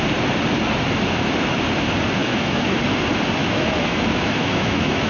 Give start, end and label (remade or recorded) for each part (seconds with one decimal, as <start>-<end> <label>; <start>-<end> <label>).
0.0-2.2 recorded; 2.2-2.8 remade; 2.8-3.4 recorded; 3.4-5.1 remade